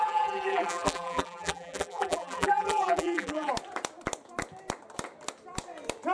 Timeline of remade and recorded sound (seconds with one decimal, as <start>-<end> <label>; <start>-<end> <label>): 0.0-3.5 remade; 3.5-6.1 recorded